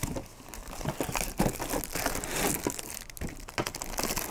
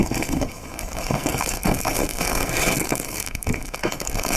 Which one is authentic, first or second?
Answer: first